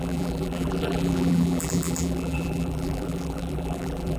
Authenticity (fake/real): fake